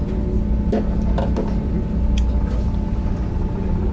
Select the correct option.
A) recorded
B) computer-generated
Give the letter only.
A